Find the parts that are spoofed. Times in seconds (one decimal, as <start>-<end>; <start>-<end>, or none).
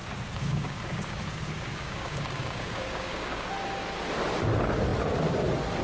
0.0-3.5